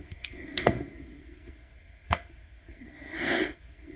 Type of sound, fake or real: fake